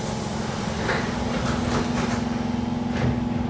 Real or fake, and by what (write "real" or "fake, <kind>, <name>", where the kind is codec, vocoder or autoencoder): real